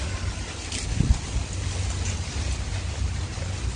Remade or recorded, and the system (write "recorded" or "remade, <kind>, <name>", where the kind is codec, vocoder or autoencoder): recorded